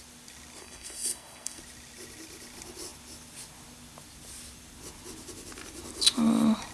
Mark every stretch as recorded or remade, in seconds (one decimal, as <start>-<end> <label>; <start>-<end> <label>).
0.0-0.6 recorded; 0.6-1.6 remade; 1.6-6.7 recorded